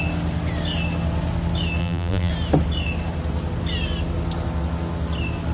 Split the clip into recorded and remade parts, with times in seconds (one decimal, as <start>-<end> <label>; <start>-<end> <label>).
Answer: 0.0-1.8 recorded; 1.8-2.3 remade; 2.3-5.5 recorded